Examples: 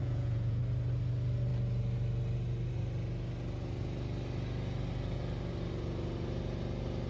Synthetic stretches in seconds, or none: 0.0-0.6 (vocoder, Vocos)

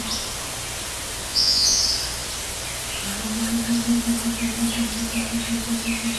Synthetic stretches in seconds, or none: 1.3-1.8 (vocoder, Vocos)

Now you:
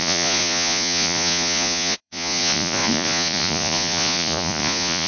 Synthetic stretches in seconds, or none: 0.0-5.1 (vocoder, Vocos)

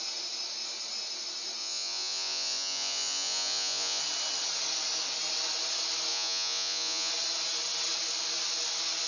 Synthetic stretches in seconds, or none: 1.6-4.0 (vocoder, Vocos); 6.1-7.1

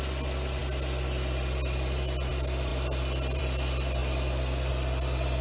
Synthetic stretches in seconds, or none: none